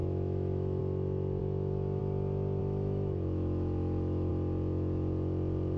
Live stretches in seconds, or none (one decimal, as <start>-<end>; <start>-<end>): 0.8-1.4; 2.0-2.6; 4.3-5.8